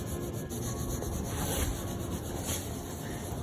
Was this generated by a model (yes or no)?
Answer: no